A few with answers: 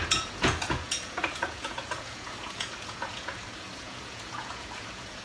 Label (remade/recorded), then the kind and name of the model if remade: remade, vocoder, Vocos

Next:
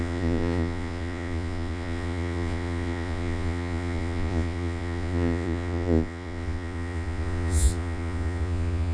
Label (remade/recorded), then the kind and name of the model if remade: remade, vocoder, Vocos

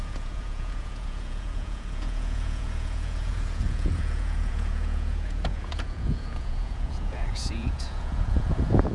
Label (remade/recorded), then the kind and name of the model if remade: remade, vocoder, Vocos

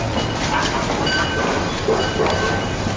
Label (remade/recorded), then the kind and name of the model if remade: recorded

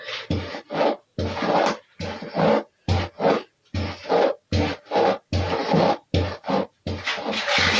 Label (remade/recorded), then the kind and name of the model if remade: recorded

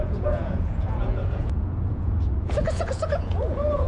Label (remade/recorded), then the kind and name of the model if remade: remade, vocoder, Vocos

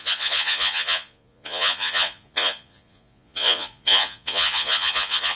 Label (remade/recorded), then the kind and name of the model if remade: remade, vocoder, Vocos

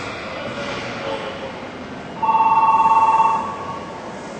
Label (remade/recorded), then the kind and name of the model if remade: recorded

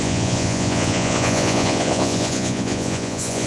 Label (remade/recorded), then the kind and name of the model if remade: remade, vocoder, Vocos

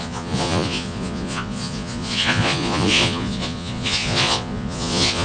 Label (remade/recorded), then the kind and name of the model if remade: remade, vocoder, Vocos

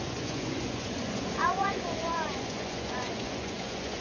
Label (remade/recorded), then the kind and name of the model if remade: remade, vocoder, Vocos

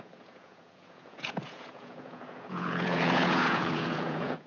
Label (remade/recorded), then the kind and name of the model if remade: remade, vocoder, Vocos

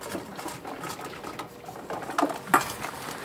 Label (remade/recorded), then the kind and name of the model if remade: recorded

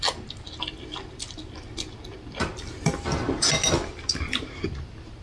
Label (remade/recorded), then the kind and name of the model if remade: recorded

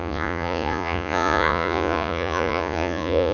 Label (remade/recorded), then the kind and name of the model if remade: remade, vocoder, Vocos